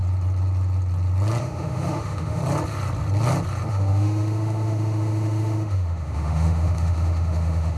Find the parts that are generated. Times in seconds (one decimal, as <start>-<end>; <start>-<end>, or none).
1.4-2.4; 3.7-7.8